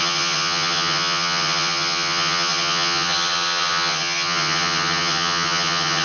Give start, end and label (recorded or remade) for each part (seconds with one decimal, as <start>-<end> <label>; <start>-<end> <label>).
0.0-6.0 remade